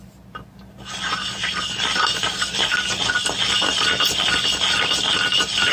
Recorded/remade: recorded